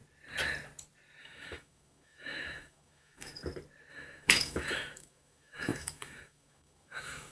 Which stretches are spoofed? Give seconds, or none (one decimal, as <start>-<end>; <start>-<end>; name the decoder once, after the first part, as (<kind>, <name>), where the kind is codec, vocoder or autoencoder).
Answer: 1.2-3.3 (autoencoder, DAC-VAE); 3.9-7.3